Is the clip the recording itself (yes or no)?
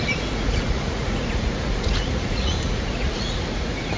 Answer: no